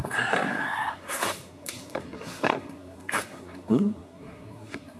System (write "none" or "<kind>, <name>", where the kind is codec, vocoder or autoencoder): codec, SNAC